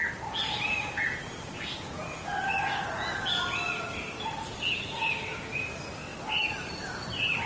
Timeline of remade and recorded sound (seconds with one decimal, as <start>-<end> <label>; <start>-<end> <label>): 0.0-7.5 recorded